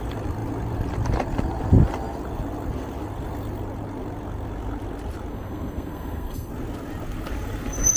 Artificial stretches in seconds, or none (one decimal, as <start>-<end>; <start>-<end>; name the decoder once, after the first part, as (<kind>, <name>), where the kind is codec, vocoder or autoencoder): 5.3-6.5 (codec, SNAC)